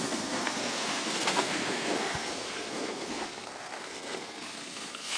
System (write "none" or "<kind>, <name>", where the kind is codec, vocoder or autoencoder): codec, SNAC